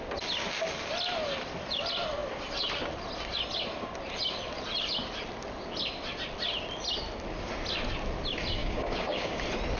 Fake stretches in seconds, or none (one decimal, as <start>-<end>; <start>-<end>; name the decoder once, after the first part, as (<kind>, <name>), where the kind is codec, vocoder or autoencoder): 8.6-9.4 (codec, DAC)